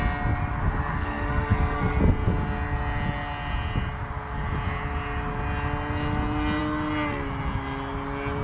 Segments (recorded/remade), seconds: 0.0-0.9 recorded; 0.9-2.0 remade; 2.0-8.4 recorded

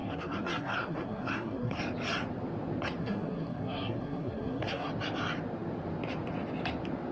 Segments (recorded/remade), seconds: 0.0-1.8 remade; 1.8-3.0 recorded; 3.0-4.9 remade; 4.9-7.1 recorded

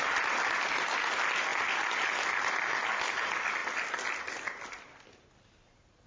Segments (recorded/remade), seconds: 0.0-6.1 recorded